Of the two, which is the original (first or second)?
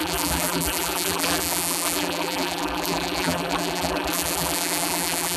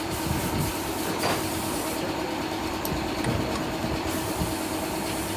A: second